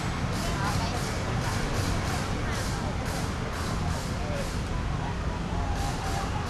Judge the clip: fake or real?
real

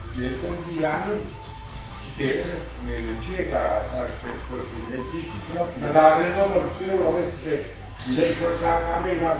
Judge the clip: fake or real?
fake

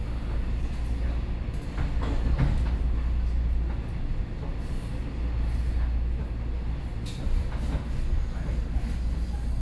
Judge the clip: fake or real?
real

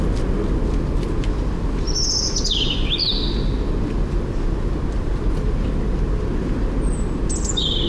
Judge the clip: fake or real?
real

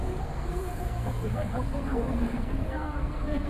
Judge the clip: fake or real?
fake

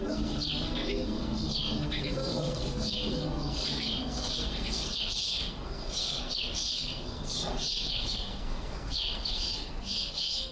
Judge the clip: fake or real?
fake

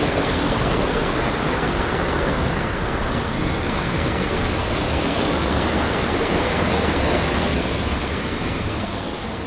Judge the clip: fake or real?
fake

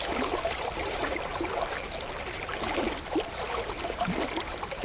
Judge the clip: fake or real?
real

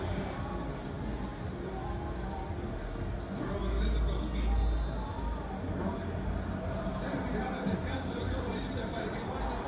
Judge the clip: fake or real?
real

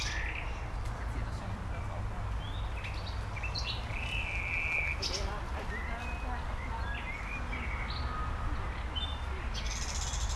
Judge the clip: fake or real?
real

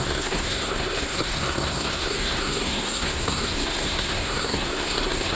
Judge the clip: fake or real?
fake